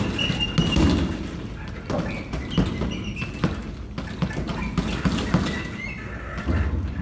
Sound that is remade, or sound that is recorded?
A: recorded